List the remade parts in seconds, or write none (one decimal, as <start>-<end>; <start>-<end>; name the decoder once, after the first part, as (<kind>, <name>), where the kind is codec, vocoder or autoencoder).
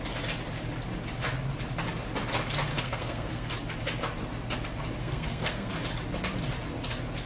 2.7-3.5 (codec, SNAC); 5.0-5.7